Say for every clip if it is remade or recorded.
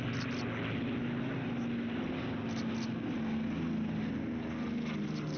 recorded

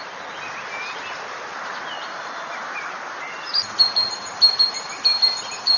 recorded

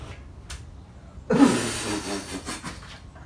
recorded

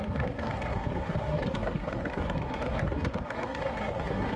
remade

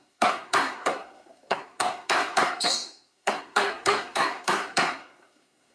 remade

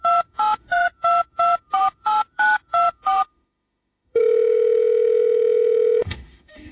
remade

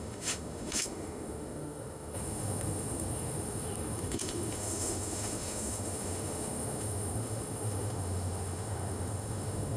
remade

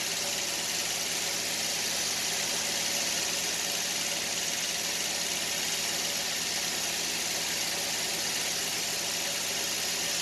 recorded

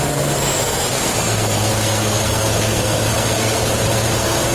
remade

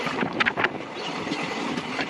remade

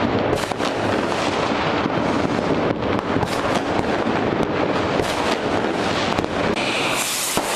recorded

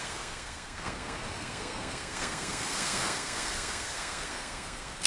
remade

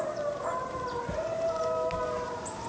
remade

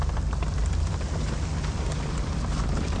remade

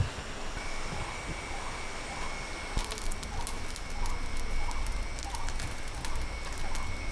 recorded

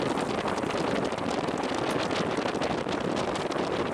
recorded